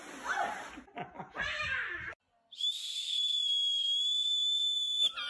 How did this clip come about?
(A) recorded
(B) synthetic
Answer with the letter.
A